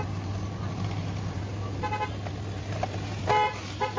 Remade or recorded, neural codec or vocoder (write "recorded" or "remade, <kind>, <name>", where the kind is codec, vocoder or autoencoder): recorded